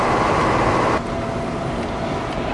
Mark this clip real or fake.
real